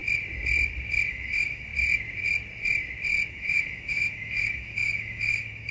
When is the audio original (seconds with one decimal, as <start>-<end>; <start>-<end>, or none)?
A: 0.0-1.1; 1.7-3.3